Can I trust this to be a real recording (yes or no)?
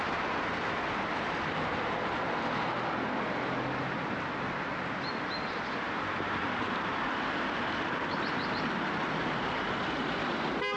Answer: yes